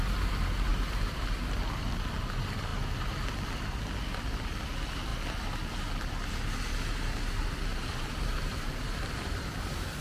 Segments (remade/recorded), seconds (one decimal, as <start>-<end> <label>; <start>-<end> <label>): 0.0-0.7 recorded; 0.7-1.4 remade; 1.4-7.7 recorded; 7.7-9.5 remade; 9.5-10.0 recorded